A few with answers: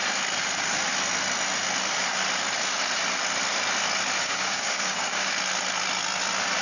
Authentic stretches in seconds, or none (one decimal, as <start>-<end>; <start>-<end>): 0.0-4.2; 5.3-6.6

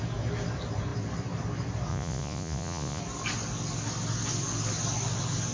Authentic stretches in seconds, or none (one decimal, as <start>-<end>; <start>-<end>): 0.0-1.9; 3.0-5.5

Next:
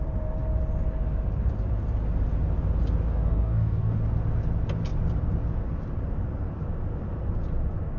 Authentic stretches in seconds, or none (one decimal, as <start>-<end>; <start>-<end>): 0.0-3.1; 4.0-8.0

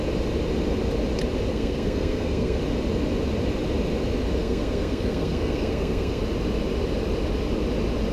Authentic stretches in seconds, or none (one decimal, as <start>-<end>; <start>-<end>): 0.0-1.5; 2.6-4.4; 6.2-8.1

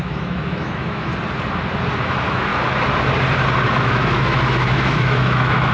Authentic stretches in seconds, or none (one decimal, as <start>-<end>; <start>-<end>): 1.1-2.0; 2.5-3.8

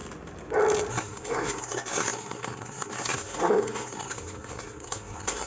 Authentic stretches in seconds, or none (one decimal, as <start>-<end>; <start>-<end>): 0.0-0.9

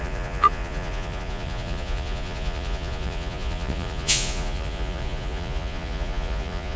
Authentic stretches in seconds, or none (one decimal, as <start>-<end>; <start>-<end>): none